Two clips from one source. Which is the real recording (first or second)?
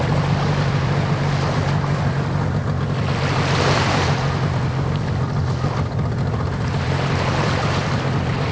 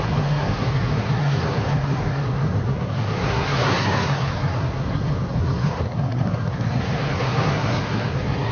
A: first